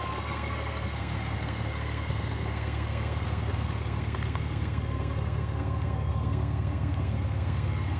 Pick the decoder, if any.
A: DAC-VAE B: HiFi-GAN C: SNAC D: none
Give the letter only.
C